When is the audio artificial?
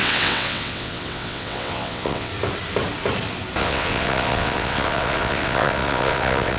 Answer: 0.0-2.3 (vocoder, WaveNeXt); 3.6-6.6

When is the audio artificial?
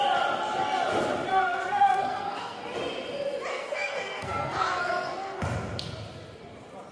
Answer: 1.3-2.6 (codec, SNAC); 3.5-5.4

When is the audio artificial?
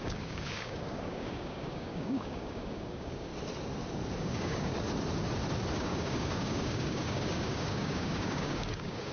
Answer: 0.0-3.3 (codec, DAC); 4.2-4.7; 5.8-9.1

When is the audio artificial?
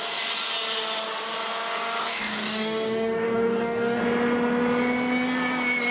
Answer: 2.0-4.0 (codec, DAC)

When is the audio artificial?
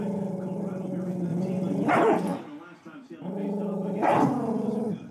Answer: 1.3-1.9 (vocoder, BigVGAN v2)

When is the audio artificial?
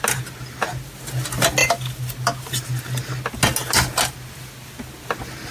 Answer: none